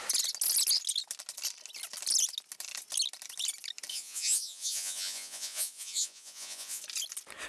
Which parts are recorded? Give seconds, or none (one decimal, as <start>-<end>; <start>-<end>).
0.0-3.9; 6.8-7.5